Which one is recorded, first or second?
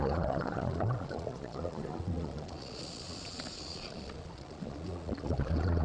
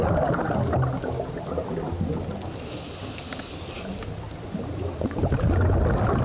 second